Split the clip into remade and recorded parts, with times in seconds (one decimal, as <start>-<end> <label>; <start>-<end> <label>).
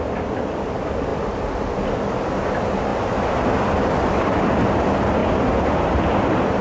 0.0-6.6 recorded